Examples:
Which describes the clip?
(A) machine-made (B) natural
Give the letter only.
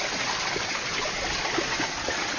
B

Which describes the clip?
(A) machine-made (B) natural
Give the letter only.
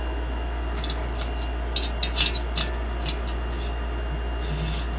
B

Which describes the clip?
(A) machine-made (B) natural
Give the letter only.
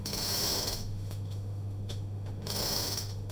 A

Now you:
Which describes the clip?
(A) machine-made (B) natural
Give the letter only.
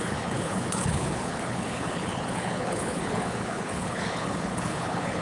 A